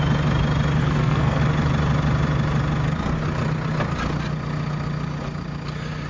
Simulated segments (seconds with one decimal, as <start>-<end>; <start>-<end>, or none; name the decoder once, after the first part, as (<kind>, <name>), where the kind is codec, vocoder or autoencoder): 0.8-1.4 (codec, SNAC)